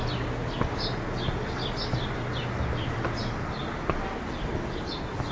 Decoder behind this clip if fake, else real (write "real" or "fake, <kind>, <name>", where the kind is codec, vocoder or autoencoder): real